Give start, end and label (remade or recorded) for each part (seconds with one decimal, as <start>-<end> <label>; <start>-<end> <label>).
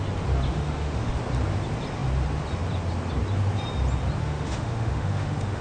0.0-0.5 recorded; 0.5-1.1 remade; 1.1-4.2 recorded; 4.2-5.6 remade